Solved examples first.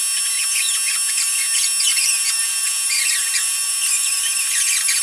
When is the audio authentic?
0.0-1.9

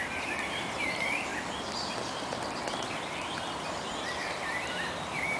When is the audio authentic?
1.3-4.5

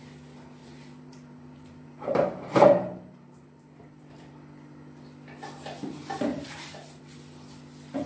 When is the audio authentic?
0.0-0.6; 4.3-6.3; 7.0-8.1

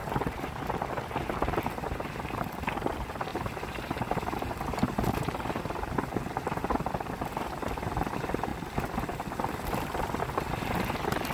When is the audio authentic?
0.0-3.3; 5.6-11.3